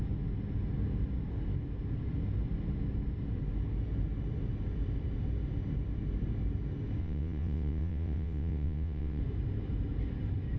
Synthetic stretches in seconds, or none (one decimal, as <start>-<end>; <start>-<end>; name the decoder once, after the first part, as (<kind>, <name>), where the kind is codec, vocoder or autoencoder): 7.0-9.2 (vocoder, WaveNeXt)